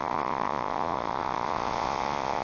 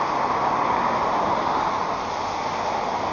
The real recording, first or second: second